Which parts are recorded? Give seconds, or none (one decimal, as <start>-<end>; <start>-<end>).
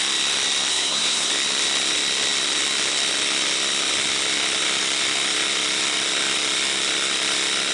0.0-0.7; 1.3-7.7